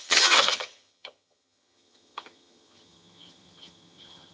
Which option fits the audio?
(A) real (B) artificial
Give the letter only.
B